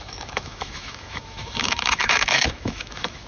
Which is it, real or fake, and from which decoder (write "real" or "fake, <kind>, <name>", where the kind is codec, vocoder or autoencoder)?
fake, autoencoder, DAC-VAE